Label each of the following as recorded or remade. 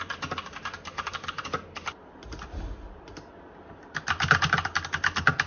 recorded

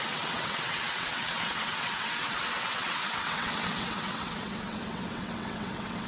remade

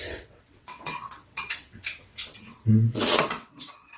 remade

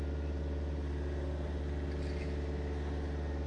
recorded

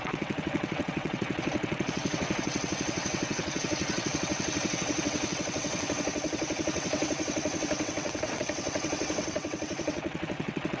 remade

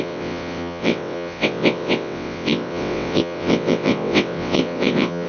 remade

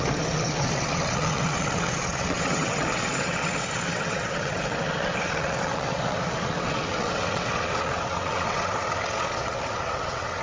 remade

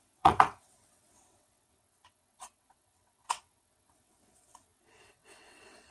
remade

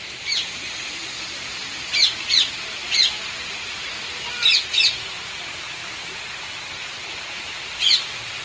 recorded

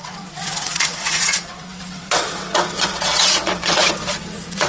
remade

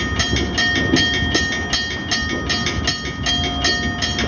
recorded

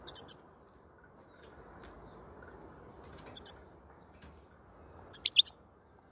recorded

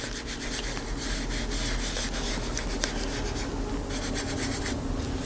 recorded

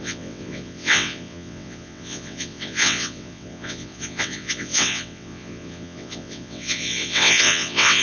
remade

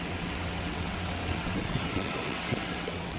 remade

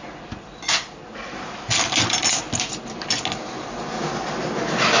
recorded